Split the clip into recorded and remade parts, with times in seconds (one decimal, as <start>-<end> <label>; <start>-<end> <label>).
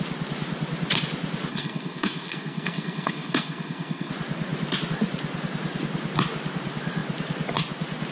0.0-1.5 recorded; 1.5-4.1 remade; 4.1-8.1 recorded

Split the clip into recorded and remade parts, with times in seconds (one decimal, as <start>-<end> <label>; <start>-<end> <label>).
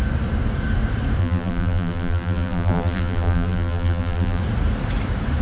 0.0-1.2 recorded; 1.2-4.4 remade; 4.4-5.4 recorded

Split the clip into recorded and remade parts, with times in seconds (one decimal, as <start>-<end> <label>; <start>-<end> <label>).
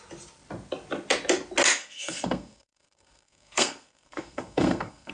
0.0-1.8 recorded; 1.8-5.1 remade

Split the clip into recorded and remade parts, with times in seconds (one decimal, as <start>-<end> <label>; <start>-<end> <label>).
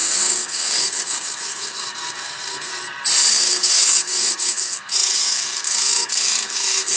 0.0-2.7 remade; 2.7-3.3 recorded; 3.3-7.0 remade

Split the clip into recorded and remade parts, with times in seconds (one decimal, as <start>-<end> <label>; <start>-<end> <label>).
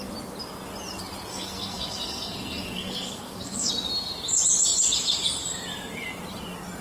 0.0-1.3 recorded; 1.3-3.7 remade; 3.7-6.8 recorded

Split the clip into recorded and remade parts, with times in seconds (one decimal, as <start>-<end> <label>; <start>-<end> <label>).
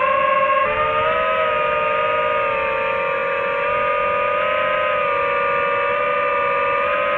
0.0-7.2 recorded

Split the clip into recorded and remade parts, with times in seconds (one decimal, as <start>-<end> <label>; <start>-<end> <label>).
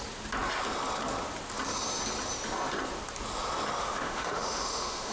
0.0-3.8 recorded; 3.8-5.1 remade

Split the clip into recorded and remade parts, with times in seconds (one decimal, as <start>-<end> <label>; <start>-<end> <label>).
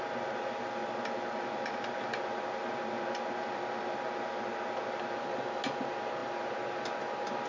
0.0-7.5 recorded